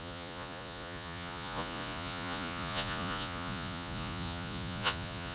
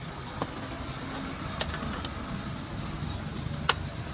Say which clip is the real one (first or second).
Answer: second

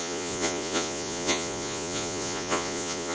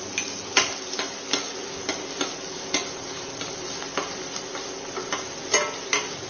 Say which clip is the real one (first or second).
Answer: second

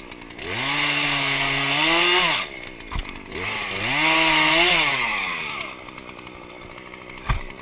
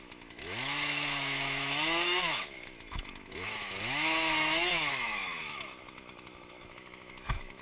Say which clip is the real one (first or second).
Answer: first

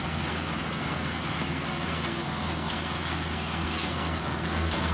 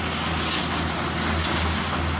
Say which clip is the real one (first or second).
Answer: second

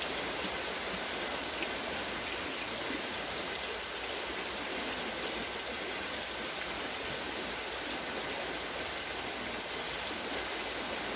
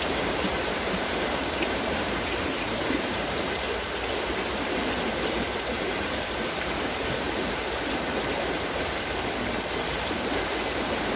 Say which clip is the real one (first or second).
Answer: first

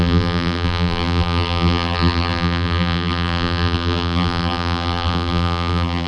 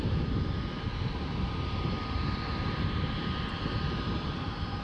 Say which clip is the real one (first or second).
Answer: second